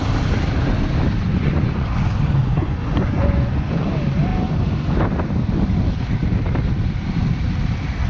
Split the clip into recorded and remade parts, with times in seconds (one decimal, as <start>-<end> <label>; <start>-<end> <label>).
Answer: 0.0-1.3 recorded; 1.3-1.9 remade; 1.9-2.4 recorded; 2.4-3.9 remade; 3.9-8.1 recorded